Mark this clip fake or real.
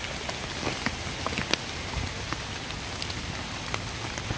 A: real